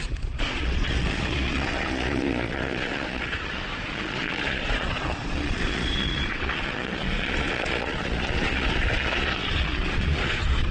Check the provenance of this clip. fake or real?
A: fake